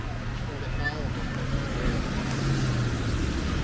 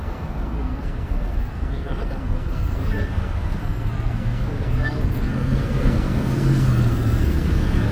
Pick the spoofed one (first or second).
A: second